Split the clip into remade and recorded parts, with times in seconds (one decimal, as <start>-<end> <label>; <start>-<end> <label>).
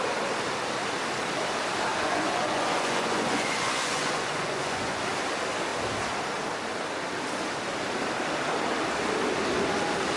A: 0.0-1.9 recorded; 1.9-5.0 remade; 5.0-10.2 recorded